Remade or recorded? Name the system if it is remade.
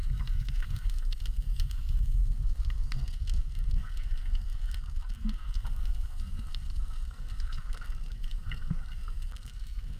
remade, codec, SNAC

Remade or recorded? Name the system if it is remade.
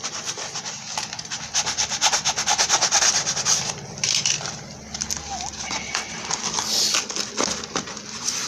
recorded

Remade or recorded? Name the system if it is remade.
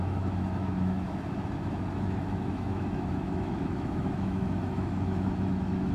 remade, autoencoder, DAC-VAE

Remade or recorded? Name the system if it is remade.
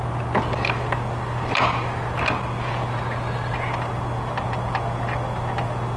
recorded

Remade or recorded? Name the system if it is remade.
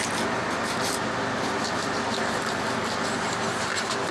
recorded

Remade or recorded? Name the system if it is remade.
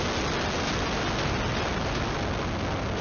recorded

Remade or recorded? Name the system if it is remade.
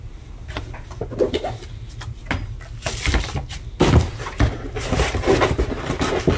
recorded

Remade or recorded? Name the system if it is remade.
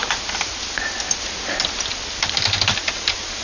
recorded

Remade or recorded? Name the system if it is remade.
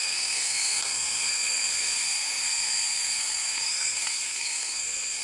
remade, codec, SNAC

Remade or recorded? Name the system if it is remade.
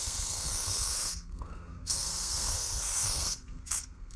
remade, codec, SNAC